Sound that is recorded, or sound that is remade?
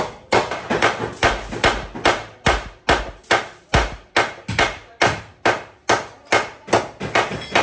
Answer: recorded